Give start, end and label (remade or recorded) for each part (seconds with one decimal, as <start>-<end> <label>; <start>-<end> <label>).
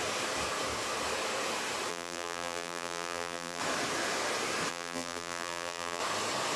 0.0-1.9 recorded; 1.9-3.6 remade; 3.6-4.7 recorded; 4.7-6.0 remade; 6.0-6.6 recorded